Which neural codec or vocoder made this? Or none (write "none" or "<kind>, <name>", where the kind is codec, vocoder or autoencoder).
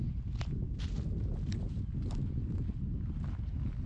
none